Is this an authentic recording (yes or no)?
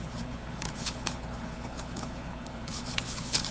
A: no